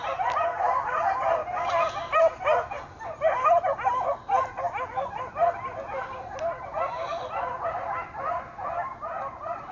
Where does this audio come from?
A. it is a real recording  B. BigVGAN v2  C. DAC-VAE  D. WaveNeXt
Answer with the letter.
A